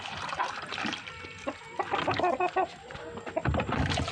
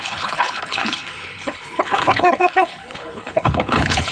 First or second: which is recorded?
first